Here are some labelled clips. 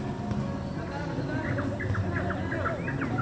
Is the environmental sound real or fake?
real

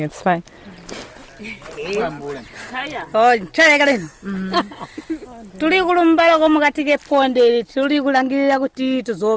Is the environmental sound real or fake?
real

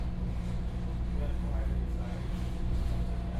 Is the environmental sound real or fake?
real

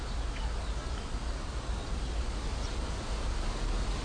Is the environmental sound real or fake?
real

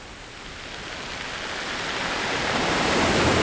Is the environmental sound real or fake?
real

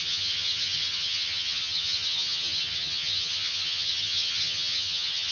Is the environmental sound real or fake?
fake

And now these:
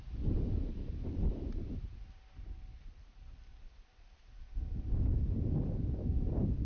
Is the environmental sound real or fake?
real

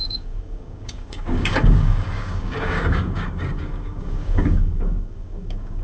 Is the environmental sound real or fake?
fake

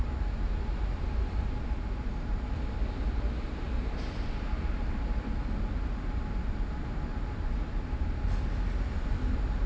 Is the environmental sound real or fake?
real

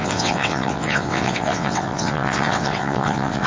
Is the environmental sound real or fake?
fake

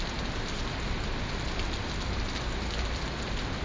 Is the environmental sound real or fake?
real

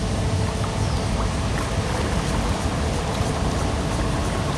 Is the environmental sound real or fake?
real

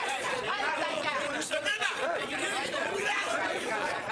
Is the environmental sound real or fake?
fake